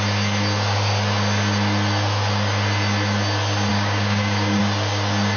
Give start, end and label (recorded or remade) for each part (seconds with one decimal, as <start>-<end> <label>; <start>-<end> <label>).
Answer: 0.0-3.7 recorded; 3.7-4.6 remade; 4.6-5.4 recorded